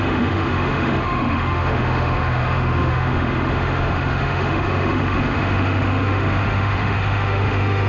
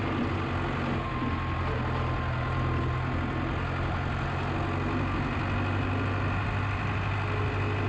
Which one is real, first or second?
second